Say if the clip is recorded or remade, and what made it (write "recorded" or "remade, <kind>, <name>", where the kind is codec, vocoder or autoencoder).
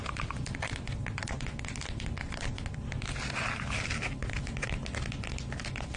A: recorded